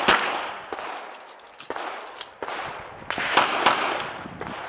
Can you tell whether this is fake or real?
real